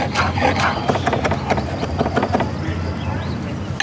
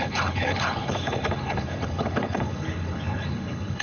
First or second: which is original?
first